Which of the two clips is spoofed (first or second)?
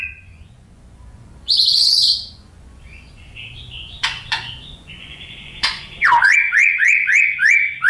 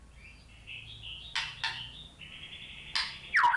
first